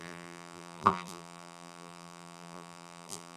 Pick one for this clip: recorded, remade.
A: remade